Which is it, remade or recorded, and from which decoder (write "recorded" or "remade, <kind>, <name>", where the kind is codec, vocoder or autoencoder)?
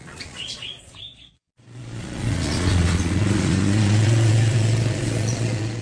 remade, vocoder, Vocos